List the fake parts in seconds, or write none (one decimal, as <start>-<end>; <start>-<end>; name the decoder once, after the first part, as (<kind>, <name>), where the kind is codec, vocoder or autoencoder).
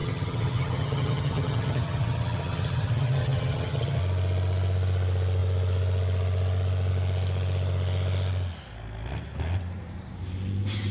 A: 0.0-4.0 (vocoder, HiFi-GAN)